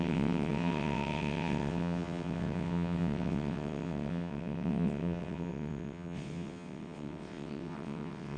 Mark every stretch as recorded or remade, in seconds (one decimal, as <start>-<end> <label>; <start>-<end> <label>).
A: 0.0-8.4 remade